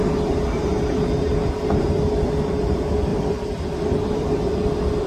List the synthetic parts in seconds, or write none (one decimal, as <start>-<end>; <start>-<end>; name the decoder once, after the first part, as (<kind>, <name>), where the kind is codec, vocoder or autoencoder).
3.1-4.5 (vocoder, BigVGAN v2)